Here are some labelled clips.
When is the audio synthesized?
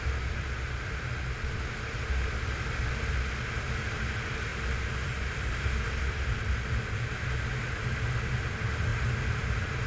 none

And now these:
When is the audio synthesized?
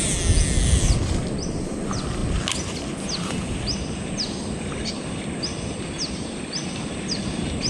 none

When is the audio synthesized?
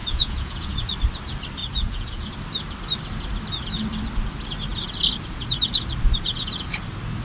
0.0-0.9 (vocoder, Vocos); 1.6-2.3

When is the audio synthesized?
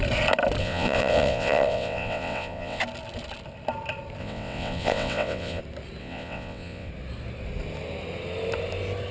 0.6-2.8 (vocoder, WaveNeXt); 4.2-5.6; 6.0-6.9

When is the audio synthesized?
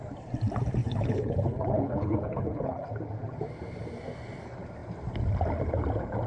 0.8-2.9 (codec, HILCodec)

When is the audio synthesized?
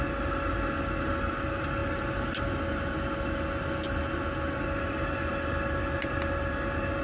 none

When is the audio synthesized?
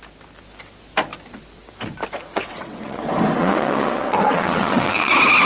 2.3-3.0 (vocoder, WaveNeXt); 3.4-5.1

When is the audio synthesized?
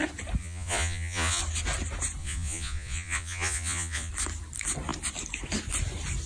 0.4-1.4 (vocoder, Vocos); 2.2-4.1